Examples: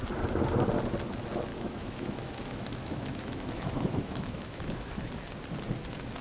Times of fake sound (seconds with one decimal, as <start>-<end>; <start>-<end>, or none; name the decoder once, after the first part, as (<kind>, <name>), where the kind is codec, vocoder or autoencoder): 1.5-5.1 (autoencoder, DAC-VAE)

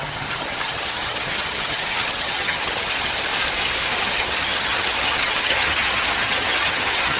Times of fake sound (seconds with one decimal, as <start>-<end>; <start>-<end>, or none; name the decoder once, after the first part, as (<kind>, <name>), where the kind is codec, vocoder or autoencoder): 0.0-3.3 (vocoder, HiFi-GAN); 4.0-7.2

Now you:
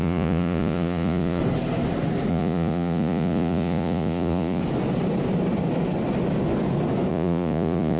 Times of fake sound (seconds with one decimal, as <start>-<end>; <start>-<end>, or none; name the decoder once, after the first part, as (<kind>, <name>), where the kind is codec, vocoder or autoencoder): 0.0-1.4 (vocoder, Vocos); 2.3-4.6; 7.1-8.0

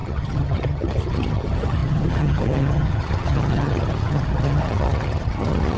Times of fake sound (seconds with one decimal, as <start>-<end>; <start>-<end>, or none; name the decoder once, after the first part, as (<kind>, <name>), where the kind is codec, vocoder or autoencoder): 0.0-5.8 (vocoder, HiFi-GAN)